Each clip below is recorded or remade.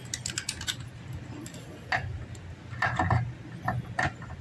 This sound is recorded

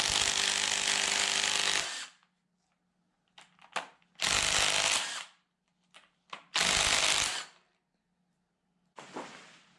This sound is recorded